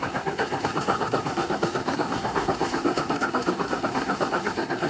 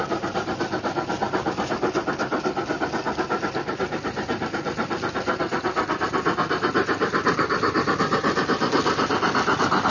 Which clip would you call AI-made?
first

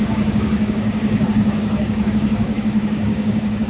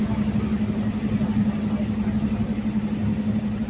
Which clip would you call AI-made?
first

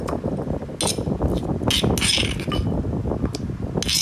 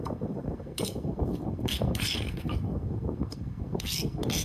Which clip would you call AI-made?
second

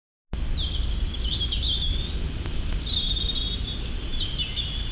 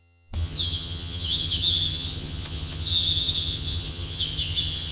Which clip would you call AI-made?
second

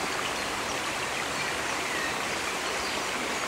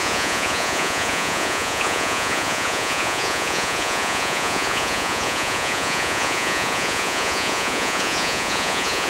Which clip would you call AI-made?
second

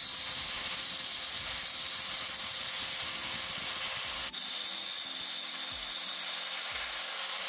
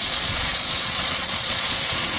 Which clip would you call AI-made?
second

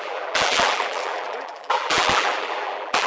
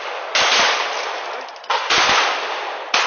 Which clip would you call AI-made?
first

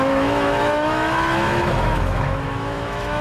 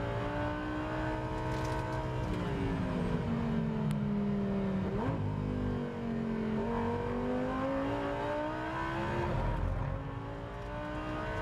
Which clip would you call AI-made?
first